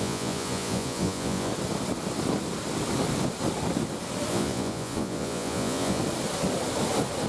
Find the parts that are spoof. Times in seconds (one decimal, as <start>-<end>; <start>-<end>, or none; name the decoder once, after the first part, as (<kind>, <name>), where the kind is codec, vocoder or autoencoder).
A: 0.0-1.5 (vocoder, Vocos); 4.3-6.0